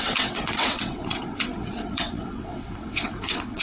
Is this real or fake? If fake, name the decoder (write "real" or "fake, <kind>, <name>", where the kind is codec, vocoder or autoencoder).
fake, vocoder, WaveNeXt